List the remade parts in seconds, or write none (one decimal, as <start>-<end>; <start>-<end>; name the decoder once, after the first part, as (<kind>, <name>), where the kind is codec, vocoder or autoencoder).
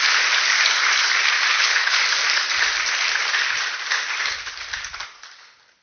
1.5-2.0 (codec, HILCodec)